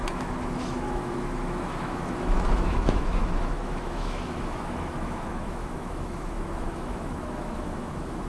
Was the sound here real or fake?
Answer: fake